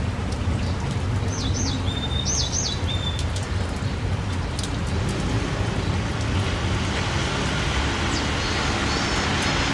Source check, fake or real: real